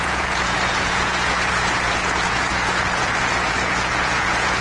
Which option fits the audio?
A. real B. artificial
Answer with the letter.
B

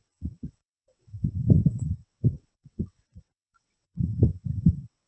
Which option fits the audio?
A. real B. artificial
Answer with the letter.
B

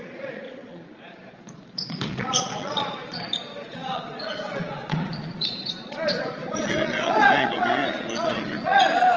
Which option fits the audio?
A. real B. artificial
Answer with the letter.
B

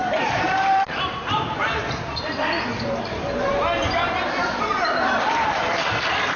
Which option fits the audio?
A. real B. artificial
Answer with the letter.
B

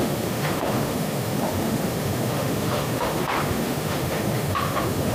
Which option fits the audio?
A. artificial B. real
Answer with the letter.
A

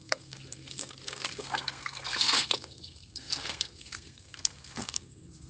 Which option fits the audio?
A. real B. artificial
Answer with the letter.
B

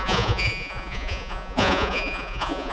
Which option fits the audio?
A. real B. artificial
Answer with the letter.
B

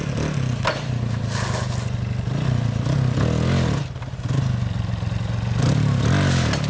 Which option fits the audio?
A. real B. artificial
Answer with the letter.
A